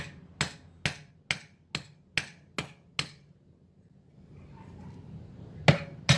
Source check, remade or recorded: recorded